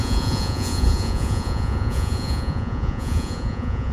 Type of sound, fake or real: fake